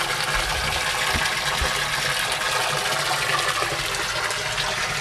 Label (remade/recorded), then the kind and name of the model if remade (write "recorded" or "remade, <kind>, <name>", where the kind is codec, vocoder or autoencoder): recorded